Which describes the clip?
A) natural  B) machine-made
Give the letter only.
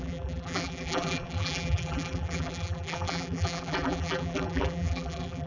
B